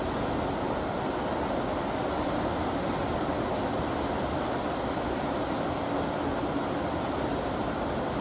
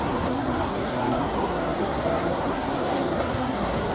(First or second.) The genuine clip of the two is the first